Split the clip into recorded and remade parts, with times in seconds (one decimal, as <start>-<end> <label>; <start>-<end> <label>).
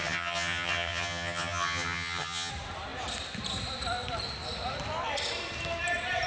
0.0-2.5 remade; 2.5-6.3 recorded